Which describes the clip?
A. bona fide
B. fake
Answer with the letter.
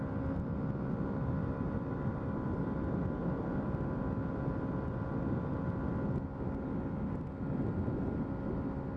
A